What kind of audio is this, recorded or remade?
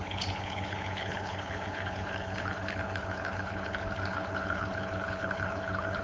remade